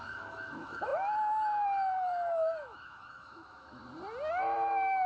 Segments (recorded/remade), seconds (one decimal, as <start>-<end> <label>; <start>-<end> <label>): 0.0-3.8 remade; 3.8-4.3 recorded; 4.3-5.1 remade